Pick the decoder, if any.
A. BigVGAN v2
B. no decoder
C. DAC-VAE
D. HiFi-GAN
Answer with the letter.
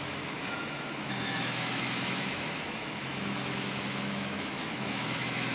C